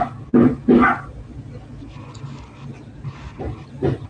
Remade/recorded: recorded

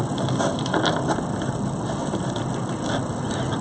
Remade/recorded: recorded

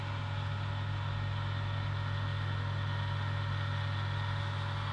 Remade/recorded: recorded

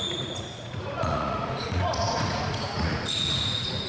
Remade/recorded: remade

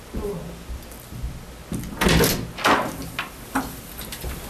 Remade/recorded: recorded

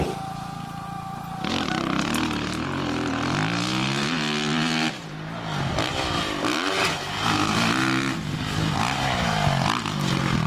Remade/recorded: recorded